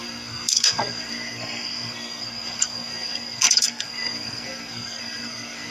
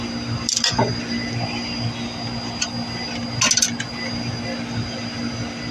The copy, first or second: first